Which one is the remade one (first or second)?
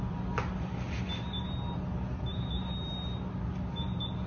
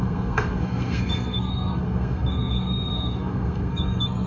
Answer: second